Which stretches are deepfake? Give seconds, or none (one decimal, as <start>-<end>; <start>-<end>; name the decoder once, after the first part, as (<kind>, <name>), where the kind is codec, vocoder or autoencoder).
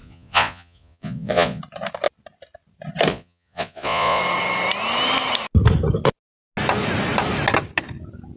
0.0-1.6 (vocoder, Vocos); 3.1-4.2